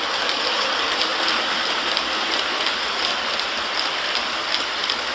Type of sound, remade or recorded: recorded